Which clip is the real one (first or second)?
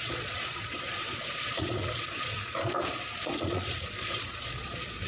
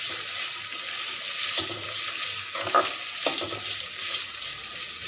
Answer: second